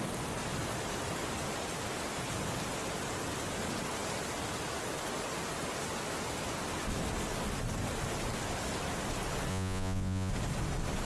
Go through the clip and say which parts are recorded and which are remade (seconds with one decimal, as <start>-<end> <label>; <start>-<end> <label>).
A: 0.0-9.5 recorded; 9.5-10.3 remade; 10.3-11.0 recorded